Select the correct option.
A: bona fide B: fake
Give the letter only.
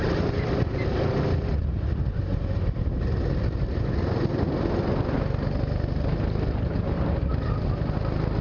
A